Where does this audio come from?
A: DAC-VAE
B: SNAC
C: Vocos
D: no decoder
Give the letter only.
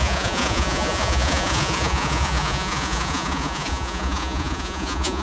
C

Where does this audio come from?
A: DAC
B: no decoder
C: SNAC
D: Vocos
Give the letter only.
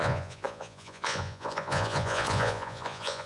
D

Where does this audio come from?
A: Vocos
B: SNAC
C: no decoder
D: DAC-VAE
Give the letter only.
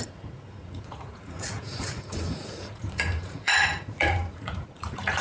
A